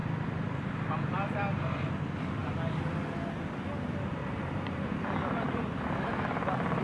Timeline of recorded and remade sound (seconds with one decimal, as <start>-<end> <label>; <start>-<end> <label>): 0.0-4.2 recorded; 4.2-6.1 remade; 6.1-6.8 recorded